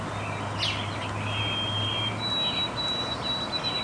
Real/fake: real